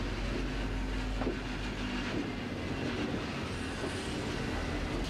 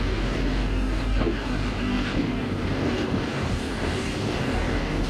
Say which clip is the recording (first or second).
first